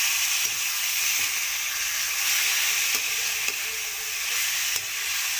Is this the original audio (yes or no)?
yes